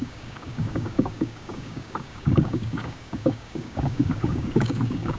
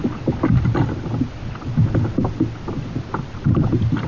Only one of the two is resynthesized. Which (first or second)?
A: first